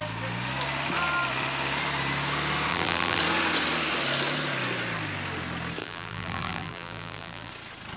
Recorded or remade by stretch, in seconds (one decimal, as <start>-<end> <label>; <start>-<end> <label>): 0.0-2.7 recorded; 2.7-3.2 remade; 3.2-5.8 recorded; 5.8-7.5 remade; 7.5-8.0 recorded